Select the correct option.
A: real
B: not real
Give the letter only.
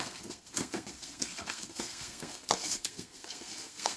B